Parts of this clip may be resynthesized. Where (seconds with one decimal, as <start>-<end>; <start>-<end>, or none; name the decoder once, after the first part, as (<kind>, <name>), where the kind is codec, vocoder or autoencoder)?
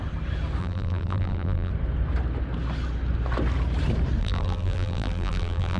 0.6-1.7 (vocoder, BigVGAN v2); 4.2-5.8